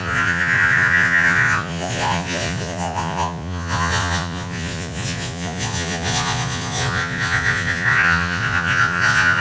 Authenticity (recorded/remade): remade